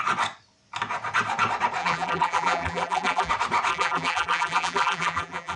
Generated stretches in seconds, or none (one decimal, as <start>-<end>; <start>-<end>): 1.8-3.3; 3.7-5.6